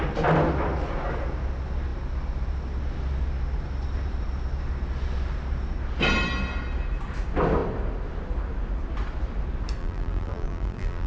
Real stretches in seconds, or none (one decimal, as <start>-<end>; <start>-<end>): 0.0-9.8